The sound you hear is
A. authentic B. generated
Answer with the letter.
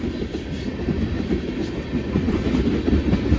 A